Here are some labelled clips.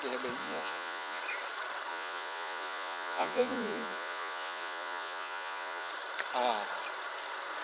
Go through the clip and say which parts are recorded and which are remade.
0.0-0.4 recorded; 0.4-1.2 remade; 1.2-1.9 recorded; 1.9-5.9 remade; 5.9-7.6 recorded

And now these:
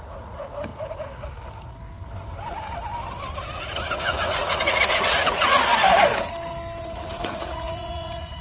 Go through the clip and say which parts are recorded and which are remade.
0.0-0.7 remade; 0.7-3.4 recorded; 3.4-5.7 remade; 5.7-6.8 recorded; 6.8-8.4 remade